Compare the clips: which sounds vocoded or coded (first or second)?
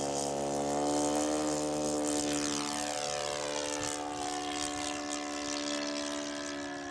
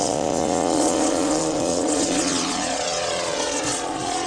second